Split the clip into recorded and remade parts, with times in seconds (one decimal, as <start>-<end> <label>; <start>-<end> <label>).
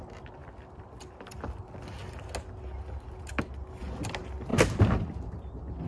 0.0-5.9 recorded